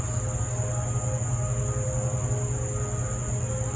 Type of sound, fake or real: real